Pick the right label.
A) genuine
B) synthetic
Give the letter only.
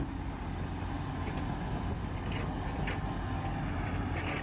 A